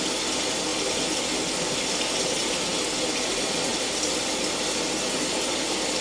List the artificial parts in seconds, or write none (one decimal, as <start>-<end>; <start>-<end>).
none